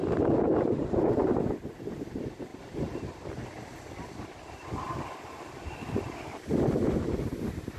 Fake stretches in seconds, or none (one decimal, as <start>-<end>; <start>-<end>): 0.0-1.2; 1.8-7.8